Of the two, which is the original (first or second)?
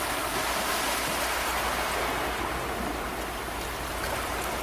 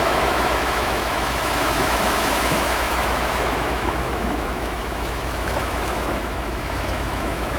first